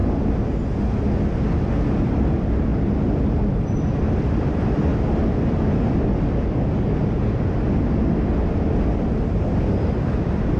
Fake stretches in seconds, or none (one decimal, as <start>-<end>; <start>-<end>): 1.5-4.9; 8.3-10.6